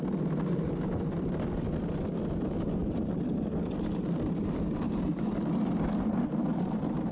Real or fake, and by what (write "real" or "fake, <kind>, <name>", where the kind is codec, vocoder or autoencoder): real